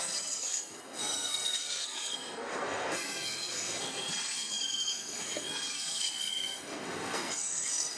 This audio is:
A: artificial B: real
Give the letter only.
A